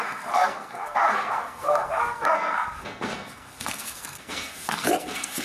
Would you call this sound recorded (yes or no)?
no